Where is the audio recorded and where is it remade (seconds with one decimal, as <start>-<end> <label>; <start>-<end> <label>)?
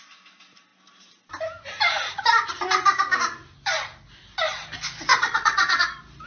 0.0-5.1 recorded; 5.1-5.8 remade; 5.8-6.3 recorded